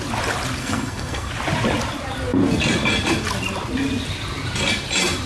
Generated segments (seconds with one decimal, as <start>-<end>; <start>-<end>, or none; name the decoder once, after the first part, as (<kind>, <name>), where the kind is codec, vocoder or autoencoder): 0.6-1.3 (codec, SNAC)